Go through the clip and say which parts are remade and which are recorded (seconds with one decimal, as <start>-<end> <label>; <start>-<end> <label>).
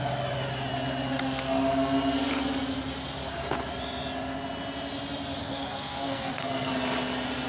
0.0-5.4 recorded; 5.4-6.7 remade; 6.7-7.5 recorded